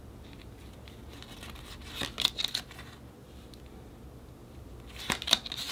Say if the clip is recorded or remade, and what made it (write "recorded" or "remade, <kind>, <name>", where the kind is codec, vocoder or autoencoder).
recorded